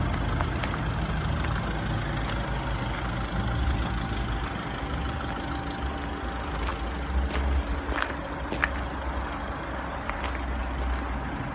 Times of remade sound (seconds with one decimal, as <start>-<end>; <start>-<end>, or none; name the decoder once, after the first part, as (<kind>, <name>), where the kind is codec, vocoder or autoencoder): none